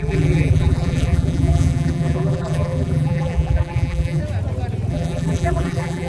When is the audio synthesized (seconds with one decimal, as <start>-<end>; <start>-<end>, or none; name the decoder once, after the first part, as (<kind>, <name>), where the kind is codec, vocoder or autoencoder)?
0.0-4.2 (vocoder, BigVGAN v2); 4.9-6.1